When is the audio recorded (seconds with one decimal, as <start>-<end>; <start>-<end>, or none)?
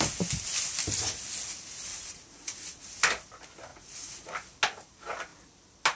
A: 0.0-1.9; 2.8-3.7; 4.3-6.0